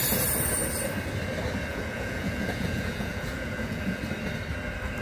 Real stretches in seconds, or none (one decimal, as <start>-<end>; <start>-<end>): 0.0-1.7; 4.0-5.0